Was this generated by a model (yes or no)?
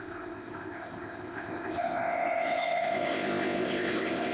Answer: yes